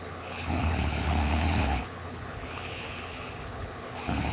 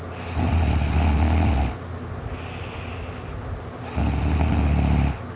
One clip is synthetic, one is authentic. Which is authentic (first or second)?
second